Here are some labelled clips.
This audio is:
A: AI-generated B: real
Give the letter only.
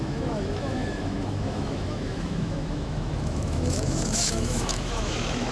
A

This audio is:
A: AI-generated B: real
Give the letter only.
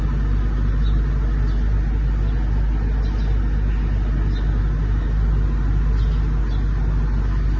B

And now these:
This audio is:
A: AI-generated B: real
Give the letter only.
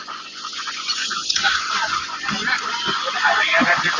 A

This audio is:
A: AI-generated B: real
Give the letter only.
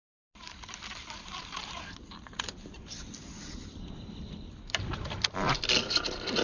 B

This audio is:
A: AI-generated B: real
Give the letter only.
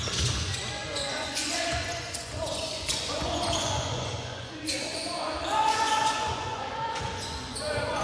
A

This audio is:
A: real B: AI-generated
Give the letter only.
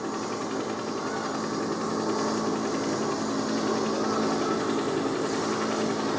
A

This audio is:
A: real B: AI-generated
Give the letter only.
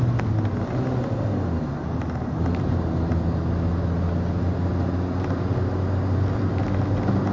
A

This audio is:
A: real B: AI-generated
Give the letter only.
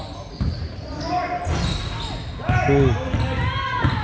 A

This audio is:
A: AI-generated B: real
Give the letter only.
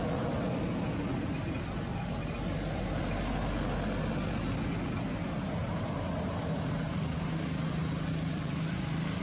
B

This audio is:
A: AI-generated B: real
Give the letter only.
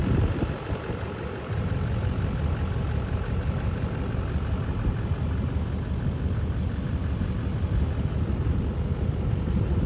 B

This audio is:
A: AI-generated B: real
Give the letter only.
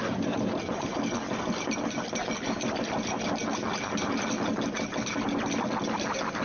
B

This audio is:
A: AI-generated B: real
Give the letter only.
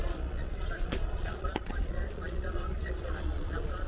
A